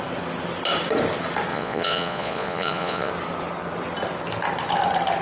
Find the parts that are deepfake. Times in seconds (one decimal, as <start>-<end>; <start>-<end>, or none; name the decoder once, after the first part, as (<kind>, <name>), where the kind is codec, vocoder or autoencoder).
1.5-3.1 (vocoder, Vocos)